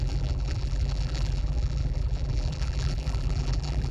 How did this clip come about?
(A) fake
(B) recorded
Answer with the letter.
A